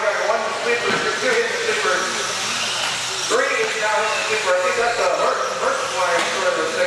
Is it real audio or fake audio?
real